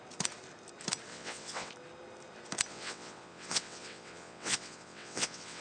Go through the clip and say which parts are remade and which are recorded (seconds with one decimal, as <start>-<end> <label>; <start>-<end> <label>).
0.0-1.1 recorded; 1.1-1.7 remade; 1.7-2.7 recorded; 2.7-5.6 remade